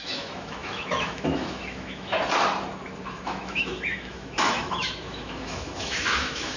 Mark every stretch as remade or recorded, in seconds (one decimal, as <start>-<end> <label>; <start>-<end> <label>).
0.0-2.2 remade; 2.2-3.1 recorded; 3.1-6.6 remade